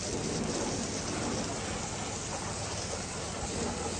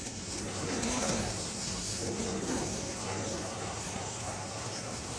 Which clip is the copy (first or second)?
second